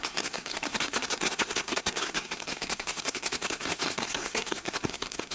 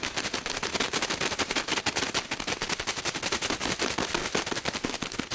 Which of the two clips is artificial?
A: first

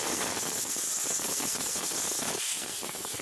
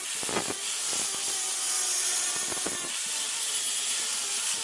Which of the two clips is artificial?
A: first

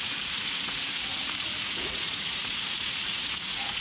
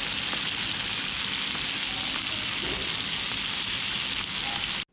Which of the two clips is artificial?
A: first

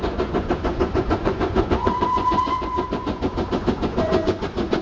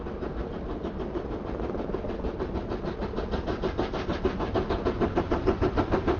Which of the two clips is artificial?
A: first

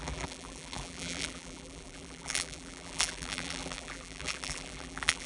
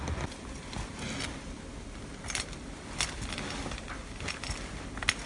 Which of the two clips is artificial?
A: first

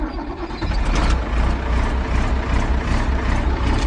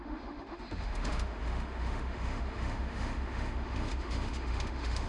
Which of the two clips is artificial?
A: second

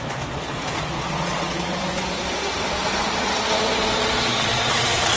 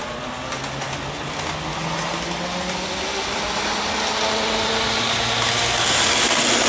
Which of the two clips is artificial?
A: first